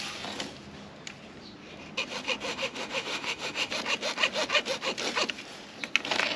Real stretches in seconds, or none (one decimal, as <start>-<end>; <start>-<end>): 0.0-2.5; 3.7-6.4